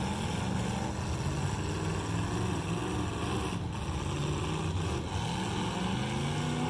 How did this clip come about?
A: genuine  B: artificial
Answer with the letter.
A